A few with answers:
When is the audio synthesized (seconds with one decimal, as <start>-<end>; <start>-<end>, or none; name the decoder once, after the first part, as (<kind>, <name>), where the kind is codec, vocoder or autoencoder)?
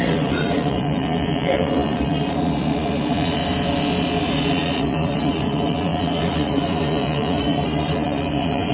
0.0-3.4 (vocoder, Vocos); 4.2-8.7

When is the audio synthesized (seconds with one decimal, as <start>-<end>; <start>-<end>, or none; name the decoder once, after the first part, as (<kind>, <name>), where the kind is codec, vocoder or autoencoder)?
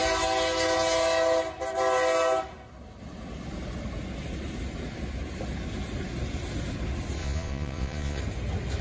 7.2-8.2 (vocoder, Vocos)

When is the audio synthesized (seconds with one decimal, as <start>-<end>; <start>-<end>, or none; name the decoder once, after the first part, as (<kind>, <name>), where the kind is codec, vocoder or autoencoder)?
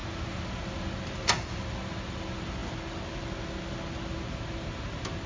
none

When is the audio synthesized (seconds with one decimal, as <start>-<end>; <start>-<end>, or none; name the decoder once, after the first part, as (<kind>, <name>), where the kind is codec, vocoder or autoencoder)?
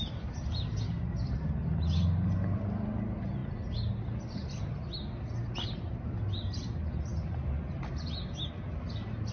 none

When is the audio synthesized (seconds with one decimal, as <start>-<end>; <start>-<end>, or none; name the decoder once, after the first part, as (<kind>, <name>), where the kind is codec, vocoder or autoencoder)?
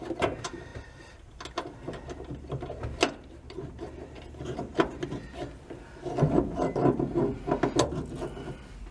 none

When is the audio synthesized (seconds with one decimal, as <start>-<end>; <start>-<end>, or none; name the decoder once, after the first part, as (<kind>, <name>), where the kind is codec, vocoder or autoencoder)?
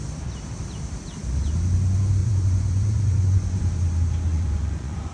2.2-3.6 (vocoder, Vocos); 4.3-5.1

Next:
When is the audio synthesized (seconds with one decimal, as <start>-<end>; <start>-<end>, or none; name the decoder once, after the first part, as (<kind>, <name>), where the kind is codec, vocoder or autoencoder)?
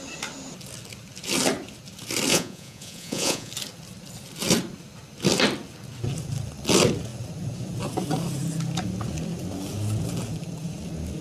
2.3-3.5 (vocoder, Vocos)